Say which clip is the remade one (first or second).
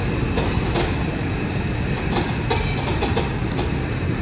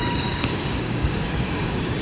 second